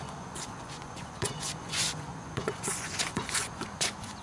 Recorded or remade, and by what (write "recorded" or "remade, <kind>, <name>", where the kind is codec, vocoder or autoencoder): remade, vocoder, Vocos